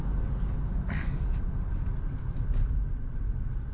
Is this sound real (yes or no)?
yes